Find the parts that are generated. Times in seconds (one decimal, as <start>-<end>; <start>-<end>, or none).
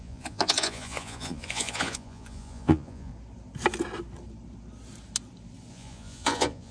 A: 0.0-3.1; 5.7-6.7